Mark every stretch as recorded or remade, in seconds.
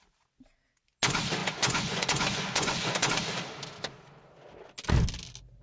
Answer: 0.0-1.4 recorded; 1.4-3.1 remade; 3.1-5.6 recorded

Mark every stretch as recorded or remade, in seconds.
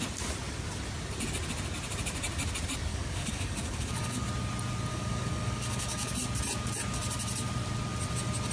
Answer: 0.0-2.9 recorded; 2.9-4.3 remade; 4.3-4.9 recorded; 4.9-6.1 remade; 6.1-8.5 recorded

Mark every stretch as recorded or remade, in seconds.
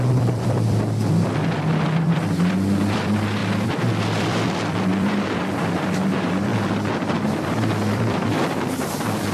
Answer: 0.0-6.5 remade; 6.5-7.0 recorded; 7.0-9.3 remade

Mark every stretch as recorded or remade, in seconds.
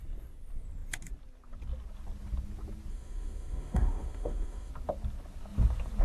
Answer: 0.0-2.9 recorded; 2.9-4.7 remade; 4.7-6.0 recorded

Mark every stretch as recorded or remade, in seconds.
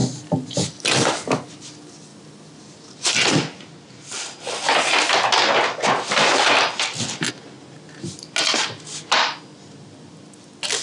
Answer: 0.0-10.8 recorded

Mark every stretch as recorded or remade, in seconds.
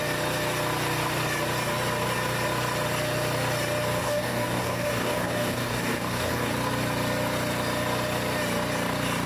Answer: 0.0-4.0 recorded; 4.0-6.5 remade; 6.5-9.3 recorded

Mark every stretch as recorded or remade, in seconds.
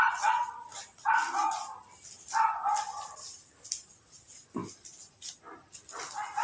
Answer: 0.0-6.4 recorded